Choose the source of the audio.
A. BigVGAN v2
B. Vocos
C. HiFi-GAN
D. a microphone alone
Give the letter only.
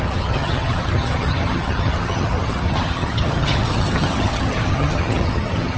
C